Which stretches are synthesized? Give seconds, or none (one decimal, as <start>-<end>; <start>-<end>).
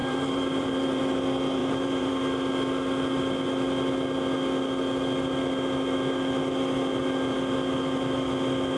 0.0-1.0; 1.6-2.1